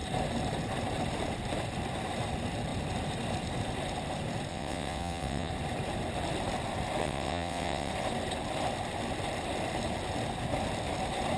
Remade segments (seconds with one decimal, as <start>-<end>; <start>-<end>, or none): 4.5-5.5; 7.0-7.9